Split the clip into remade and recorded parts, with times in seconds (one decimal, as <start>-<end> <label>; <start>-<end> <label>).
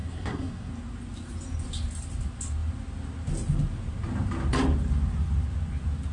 0.0-0.7 remade; 0.7-6.1 recorded